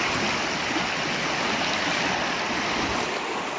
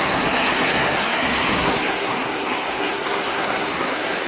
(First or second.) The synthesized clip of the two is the second